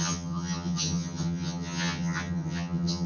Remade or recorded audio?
remade